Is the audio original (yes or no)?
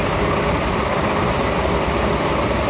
yes